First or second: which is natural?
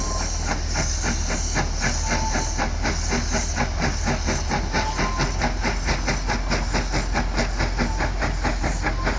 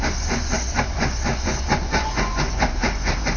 first